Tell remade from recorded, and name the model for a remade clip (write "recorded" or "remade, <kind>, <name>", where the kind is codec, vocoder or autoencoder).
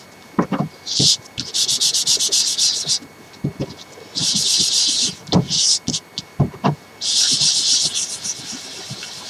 recorded